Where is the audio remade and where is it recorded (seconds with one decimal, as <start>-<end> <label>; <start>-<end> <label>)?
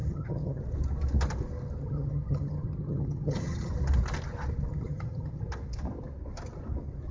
0.0-0.6 remade; 0.6-1.8 recorded; 1.8-3.7 remade; 3.7-4.7 recorded; 4.7-5.4 remade; 5.4-7.1 recorded